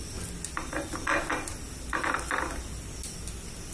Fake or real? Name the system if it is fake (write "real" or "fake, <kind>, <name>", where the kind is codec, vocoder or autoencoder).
real